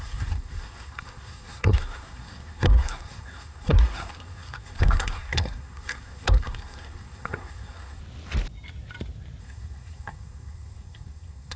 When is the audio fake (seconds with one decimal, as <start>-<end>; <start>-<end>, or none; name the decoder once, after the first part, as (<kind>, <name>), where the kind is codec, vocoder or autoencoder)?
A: 0.0-8.0 (codec, SNAC); 9.4-11.6